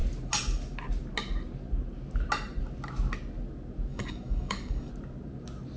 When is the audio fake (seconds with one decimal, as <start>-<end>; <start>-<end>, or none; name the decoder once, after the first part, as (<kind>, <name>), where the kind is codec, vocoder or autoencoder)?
3.9-4.9 (codec, DAC)